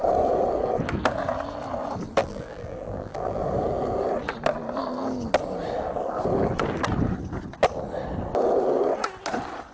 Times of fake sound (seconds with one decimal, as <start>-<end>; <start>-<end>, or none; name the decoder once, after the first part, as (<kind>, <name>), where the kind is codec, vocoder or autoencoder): 2.2-3.4 (vocoder, BigVGAN v2)